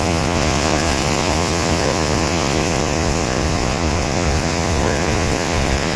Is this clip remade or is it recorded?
remade